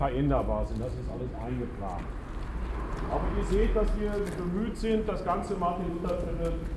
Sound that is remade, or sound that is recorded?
recorded